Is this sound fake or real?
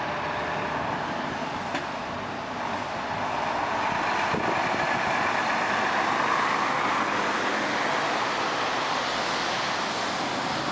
real